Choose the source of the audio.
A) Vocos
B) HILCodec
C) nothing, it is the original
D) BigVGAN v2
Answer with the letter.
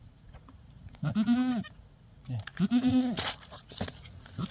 A